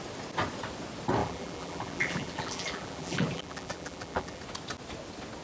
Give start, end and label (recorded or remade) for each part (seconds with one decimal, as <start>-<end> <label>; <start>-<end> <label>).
0.0-1.2 recorded; 1.2-4.4 remade; 4.4-5.4 recorded